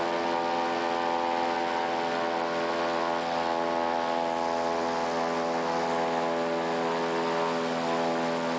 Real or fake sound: real